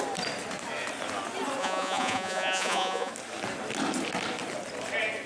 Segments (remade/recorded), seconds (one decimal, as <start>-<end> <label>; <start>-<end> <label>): 0.0-1.6 recorded; 1.6-3.1 remade; 3.1-5.3 recorded